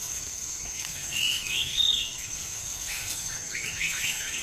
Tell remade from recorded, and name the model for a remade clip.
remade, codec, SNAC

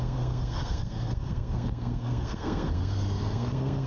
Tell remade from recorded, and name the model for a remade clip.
remade, codec, SNAC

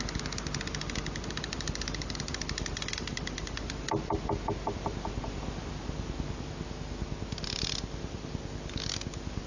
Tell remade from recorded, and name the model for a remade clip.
recorded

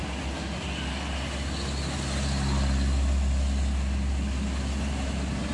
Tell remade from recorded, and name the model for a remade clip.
recorded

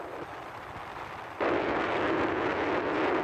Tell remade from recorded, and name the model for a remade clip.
recorded